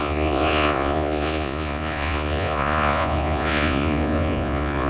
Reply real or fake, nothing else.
fake